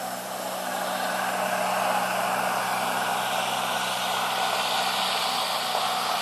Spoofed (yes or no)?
no